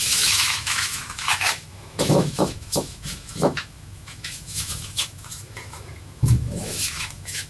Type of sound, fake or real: fake